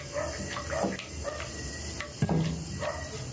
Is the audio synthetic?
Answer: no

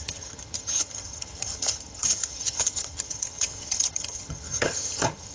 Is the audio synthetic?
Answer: yes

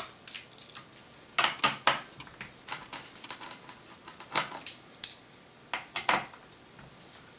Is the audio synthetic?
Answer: no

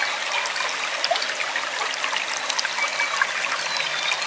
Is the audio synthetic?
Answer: no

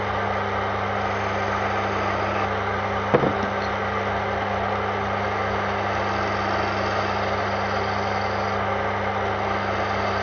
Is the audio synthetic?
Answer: no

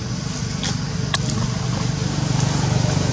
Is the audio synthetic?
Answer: no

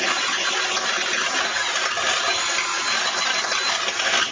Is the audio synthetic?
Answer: no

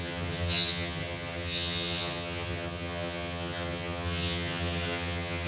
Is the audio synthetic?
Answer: yes